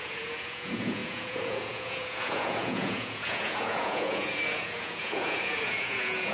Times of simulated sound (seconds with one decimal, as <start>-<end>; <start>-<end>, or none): 0.0-6.3